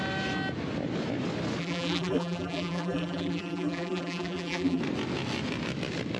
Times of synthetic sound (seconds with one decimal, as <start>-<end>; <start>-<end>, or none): 1.6-4.8